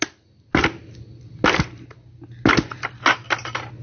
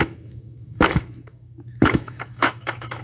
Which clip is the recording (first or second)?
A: first